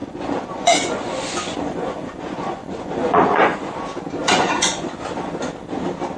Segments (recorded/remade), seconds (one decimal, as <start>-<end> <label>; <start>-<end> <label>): 0.0-3.7 remade; 3.7-4.2 recorded; 4.2-4.9 remade; 4.9-6.2 recorded